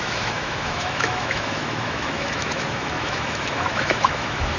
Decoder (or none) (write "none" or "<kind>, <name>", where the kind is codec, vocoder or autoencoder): autoencoder, DAC-VAE